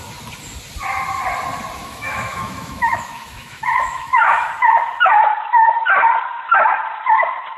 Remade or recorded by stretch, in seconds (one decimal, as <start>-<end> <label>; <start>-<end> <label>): 0.0-1.8 recorded; 1.8-4.5 remade; 4.5-7.6 recorded